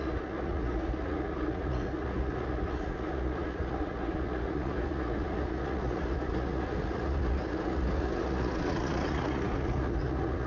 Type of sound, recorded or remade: remade